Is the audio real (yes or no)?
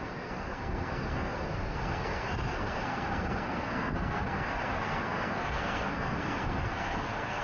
no